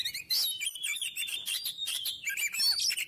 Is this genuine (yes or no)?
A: yes